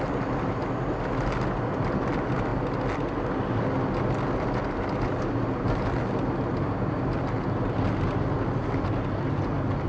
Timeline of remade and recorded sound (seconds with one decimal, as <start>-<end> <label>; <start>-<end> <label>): 0.0-9.9 recorded